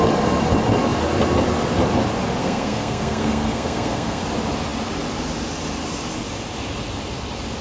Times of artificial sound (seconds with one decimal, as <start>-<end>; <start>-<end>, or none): 2.4-4.2